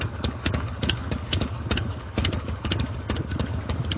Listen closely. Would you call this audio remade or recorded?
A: remade